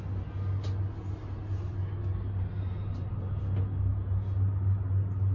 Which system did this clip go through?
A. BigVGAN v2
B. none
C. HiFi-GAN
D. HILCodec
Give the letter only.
B